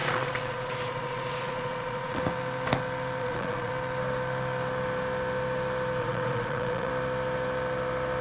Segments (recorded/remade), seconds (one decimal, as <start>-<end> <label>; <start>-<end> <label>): 0.0-2.2 remade; 2.2-3.2 recorded; 3.2-3.7 remade; 3.7-6.0 recorded; 6.0-6.9 remade; 6.9-8.2 recorded